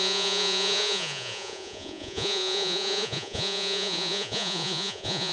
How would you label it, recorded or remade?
remade